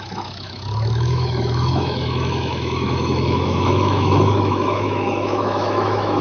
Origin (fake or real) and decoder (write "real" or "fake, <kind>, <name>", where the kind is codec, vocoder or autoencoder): fake, autoencoder, DAC-VAE